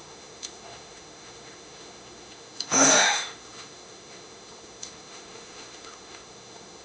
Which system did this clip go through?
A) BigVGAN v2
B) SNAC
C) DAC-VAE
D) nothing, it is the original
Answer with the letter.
C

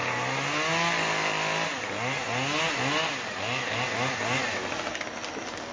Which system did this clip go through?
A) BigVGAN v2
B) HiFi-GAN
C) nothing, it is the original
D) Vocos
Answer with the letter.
C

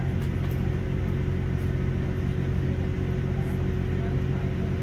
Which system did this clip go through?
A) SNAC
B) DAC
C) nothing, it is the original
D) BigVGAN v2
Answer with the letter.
C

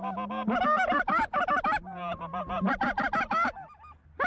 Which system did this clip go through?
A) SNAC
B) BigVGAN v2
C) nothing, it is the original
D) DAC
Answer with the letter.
C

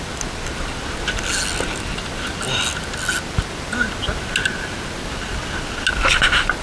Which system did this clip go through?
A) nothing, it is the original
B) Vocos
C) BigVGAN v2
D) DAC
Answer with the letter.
A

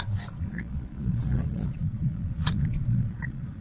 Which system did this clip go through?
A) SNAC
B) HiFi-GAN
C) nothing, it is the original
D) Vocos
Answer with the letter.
D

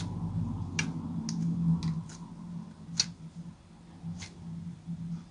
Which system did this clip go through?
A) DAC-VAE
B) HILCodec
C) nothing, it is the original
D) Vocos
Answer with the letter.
C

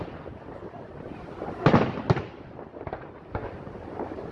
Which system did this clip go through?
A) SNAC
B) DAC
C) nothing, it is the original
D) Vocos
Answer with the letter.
C